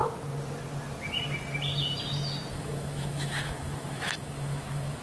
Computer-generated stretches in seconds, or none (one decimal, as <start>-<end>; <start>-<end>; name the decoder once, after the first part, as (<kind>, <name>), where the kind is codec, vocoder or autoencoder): 2.5-5.0 (autoencoder, DAC-VAE)